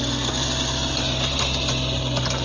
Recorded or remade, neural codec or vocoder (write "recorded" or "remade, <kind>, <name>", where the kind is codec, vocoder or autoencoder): recorded